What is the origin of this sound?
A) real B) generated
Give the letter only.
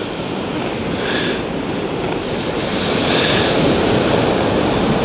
A